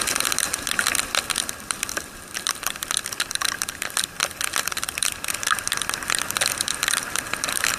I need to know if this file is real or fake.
real